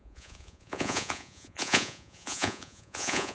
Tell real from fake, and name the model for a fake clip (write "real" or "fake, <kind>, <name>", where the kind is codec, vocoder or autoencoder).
fake, vocoder, Vocos